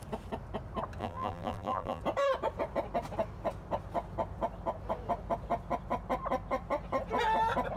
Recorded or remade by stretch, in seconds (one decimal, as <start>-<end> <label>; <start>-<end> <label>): 0.0-1.0 recorded; 1.0-2.0 remade; 2.0-7.8 recorded